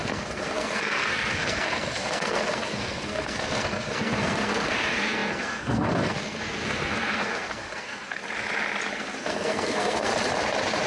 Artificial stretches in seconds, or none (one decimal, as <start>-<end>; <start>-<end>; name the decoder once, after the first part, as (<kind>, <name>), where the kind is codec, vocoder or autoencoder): 0.0-8.2 (codec, SNAC); 8.9-10.1